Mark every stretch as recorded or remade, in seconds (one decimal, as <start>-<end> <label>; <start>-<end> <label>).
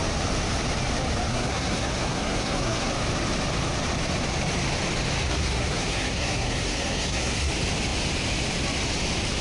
0.0-1.3 recorded; 1.3-2.9 remade; 2.9-5.3 recorded; 5.3-7.5 remade; 7.5-9.4 recorded